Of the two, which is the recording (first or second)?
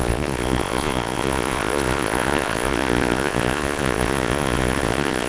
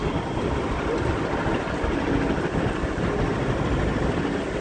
second